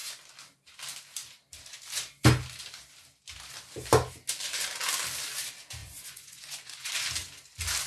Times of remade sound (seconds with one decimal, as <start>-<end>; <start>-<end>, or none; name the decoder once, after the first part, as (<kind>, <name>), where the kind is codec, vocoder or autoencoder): 5.8-6.9 (vocoder, Vocos)